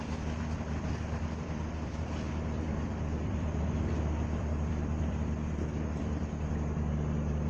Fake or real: fake